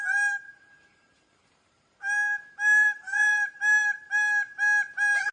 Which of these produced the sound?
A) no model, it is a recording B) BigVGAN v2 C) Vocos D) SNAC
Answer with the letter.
B